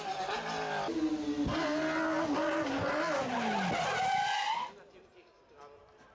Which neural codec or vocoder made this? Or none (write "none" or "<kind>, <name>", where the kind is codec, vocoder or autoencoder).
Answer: none